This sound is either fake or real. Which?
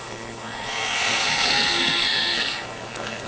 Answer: fake